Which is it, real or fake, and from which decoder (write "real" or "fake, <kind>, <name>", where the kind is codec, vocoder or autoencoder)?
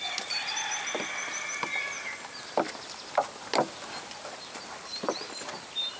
fake, vocoder, BigVGAN v2